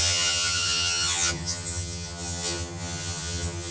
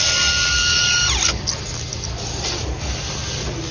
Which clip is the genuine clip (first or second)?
second